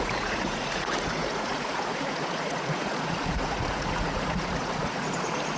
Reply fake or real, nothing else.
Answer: fake